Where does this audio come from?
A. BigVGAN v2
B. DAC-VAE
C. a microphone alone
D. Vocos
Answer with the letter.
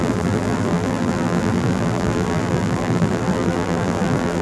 A